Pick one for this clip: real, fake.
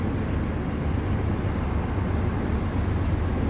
real